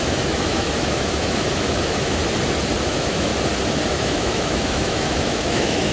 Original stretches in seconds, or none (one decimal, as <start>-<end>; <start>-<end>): 2.2-2.9; 3.3-3.9